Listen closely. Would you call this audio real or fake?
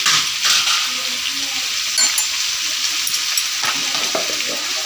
real